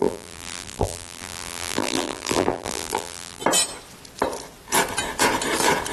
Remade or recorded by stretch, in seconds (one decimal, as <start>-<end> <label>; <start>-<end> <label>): 0.0-3.4 remade; 3.4-5.9 recorded